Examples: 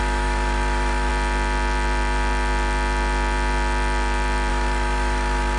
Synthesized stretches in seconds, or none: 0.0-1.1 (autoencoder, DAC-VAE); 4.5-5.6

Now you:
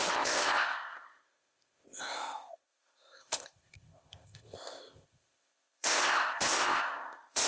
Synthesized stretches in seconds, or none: 0.0-7.5 (codec, ZipCodec)